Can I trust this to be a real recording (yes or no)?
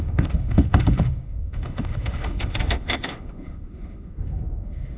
no